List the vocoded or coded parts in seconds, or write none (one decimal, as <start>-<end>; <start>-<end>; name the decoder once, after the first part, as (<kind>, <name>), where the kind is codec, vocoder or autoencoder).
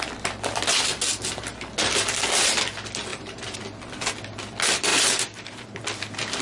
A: 3.1-3.6 (vocoder, BigVGAN v2); 4.9-5.8